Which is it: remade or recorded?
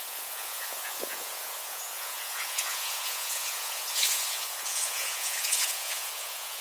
remade